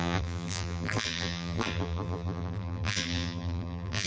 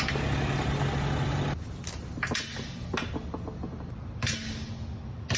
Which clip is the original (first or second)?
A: second